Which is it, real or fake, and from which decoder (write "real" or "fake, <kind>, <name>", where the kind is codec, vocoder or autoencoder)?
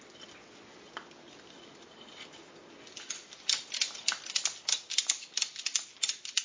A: real